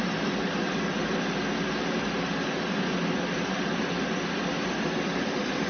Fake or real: real